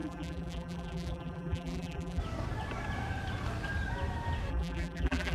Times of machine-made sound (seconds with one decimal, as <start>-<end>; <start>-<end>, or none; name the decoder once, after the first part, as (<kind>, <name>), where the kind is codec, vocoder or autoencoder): 0.0-2.2 (vocoder, BigVGAN v2); 4.5-5.3